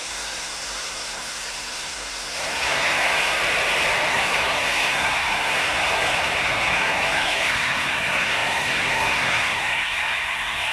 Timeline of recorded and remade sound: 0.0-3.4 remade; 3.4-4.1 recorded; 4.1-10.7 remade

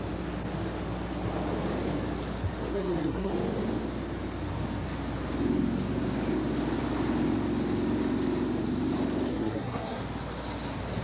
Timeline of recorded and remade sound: 0.0-2.7 recorded; 2.7-3.3 remade; 3.3-9.3 recorded; 9.3-10.0 remade; 10.0-11.0 recorded

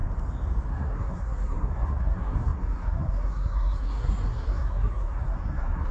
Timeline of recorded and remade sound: 0.0-0.7 recorded; 0.7-5.9 remade

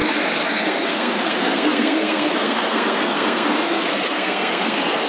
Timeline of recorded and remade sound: 0.0-5.1 remade

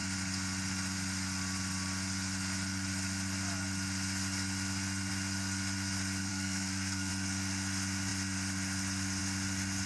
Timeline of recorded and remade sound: 0.0-6.3 recorded; 6.3-7.1 remade; 7.1-9.9 recorded